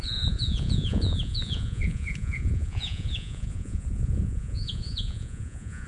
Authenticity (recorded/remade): remade